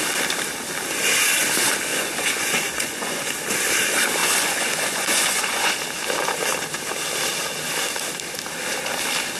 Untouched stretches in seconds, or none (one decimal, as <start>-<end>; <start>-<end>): 0.0-1.9; 3.3-4.2; 5.7-9.4